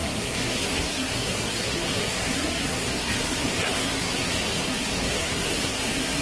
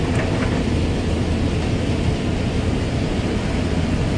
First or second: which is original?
second